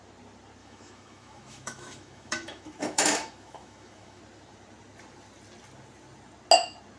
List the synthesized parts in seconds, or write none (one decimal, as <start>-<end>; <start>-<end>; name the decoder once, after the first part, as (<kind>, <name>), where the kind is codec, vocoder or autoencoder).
0.6-4.2 (autoencoder, DAC-VAE)